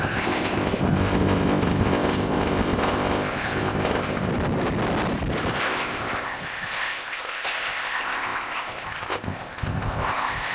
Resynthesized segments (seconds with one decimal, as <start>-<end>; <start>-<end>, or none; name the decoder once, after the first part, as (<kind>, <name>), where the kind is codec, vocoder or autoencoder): 0.0-4.3 (codec, ZipCodec); 5.5-10.5